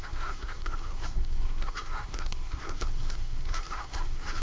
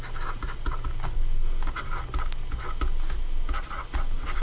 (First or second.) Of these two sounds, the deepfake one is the first